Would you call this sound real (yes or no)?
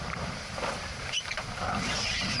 no